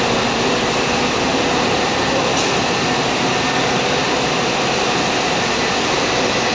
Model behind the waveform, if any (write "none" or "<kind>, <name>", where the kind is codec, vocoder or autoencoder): none